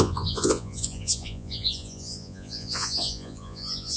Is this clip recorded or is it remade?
remade